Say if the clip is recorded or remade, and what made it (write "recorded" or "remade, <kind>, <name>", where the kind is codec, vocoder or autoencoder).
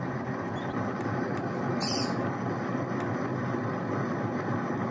recorded